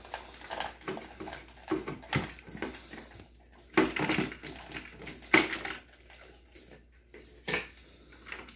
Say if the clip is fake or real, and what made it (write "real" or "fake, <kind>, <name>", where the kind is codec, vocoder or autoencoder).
real